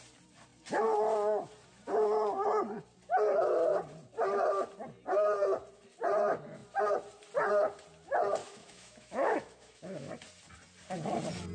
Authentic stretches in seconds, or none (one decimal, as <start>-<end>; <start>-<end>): 0.0-8.4; 10.1-11.5